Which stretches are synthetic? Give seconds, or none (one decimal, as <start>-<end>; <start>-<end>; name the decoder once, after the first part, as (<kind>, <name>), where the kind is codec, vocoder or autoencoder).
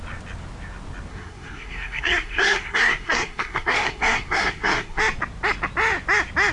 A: 1.1-5.0 (codec, SNAC)